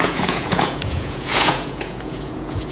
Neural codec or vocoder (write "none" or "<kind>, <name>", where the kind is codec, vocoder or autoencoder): vocoder, Vocos